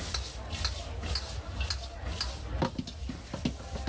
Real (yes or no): yes